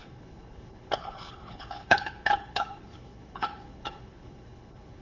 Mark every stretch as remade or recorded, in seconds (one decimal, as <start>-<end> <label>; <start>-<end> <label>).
0.0-5.0 remade